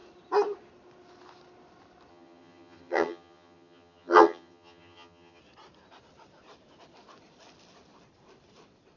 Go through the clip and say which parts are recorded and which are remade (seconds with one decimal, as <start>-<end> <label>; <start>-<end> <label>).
0.0-2.1 recorded; 2.1-5.4 remade; 5.4-9.0 recorded